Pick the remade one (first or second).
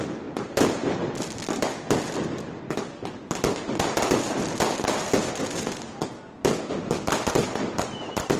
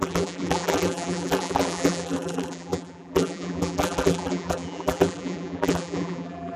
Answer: second